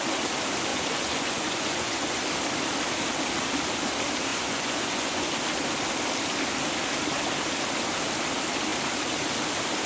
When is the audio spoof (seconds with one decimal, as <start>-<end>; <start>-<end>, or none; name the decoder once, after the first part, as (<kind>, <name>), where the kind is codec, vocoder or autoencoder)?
0.7-2.2 (vocoder, Vocos); 4.3-5.3